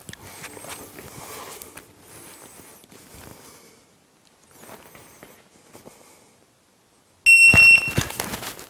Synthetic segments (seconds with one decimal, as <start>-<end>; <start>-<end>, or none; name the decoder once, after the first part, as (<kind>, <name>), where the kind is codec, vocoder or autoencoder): none